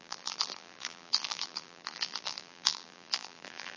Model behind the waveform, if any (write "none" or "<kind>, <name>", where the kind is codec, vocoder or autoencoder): vocoder, BigVGAN v2